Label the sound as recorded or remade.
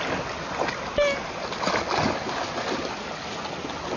recorded